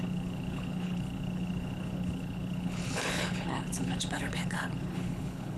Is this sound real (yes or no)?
no